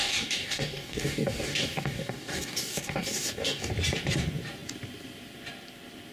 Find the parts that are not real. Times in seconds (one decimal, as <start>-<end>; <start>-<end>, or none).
0.0-3.7